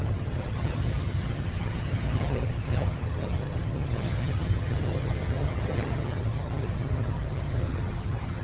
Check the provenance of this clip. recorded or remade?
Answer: remade